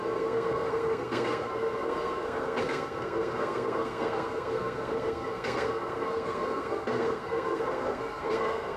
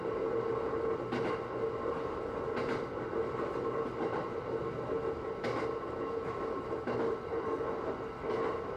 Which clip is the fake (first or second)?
first